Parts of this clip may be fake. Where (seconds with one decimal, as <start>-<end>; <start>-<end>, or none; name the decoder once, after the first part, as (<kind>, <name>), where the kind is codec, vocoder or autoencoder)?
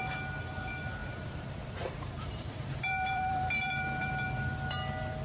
1.0-4.1 (vocoder, BigVGAN v2)